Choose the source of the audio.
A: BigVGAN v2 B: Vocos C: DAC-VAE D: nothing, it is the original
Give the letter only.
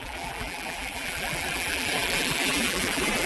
A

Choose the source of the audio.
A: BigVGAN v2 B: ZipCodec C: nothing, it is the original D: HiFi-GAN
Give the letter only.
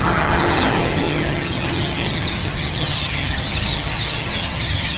D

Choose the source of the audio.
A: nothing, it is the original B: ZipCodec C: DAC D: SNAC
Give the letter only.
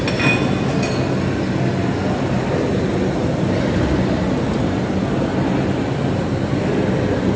A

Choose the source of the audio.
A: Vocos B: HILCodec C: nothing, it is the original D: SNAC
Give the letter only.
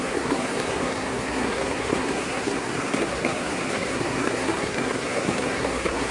D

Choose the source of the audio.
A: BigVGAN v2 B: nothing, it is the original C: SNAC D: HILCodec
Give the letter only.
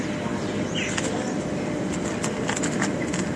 B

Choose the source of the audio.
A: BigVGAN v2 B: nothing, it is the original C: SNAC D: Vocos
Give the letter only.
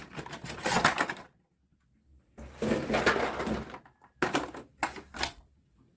B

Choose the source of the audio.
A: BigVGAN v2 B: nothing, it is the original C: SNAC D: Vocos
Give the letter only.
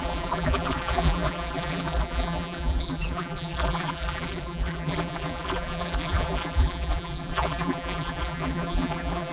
A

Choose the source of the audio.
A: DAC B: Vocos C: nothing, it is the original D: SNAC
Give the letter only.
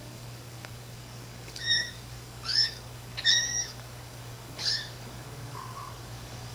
A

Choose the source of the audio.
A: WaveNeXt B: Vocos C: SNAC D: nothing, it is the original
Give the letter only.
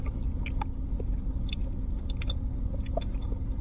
D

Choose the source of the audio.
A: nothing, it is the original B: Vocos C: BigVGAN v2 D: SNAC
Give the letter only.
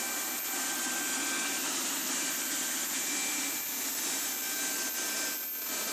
A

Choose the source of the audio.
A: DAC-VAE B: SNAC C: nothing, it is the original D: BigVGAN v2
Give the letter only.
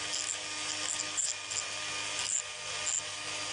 C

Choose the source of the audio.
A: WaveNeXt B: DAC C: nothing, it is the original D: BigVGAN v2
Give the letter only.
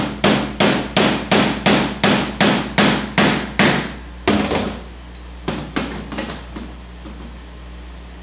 C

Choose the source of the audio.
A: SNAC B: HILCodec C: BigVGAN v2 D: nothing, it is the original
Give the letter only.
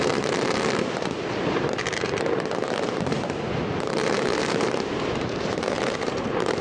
C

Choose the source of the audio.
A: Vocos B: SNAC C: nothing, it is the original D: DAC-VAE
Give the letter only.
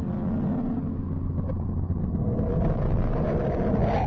C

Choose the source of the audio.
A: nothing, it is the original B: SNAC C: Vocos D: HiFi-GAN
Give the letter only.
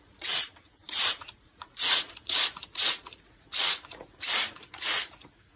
C